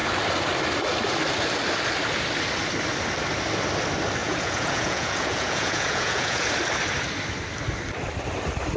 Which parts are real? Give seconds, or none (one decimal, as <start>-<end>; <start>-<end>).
0.0-4.2; 6.5-8.8

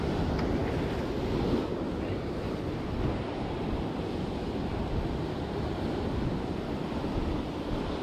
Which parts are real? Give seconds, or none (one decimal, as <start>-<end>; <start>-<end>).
0.0-8.0

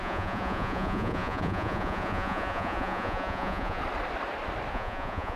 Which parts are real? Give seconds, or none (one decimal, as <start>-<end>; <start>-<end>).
3.8-4.7